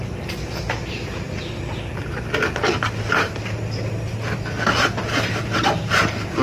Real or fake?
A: real